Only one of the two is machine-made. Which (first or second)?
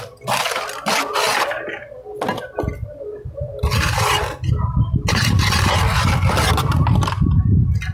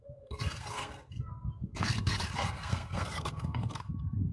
second